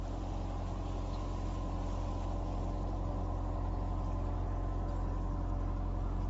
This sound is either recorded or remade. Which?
recorded